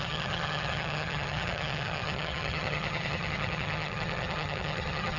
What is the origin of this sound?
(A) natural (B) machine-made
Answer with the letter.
B